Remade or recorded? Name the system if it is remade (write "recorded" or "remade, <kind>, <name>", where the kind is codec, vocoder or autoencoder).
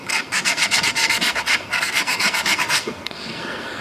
remade, codec, SNAC